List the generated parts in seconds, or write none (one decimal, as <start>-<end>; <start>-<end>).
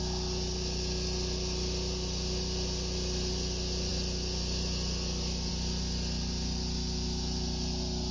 none